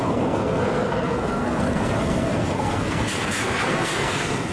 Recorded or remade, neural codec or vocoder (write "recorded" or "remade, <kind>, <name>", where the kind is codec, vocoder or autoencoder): remade, codec, SNAC